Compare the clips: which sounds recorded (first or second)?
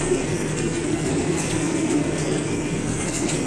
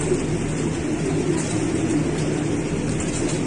second